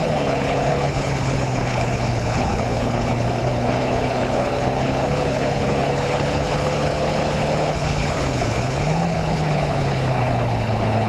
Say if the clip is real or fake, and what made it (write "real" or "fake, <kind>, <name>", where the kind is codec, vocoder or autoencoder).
fake, codec, HILCodec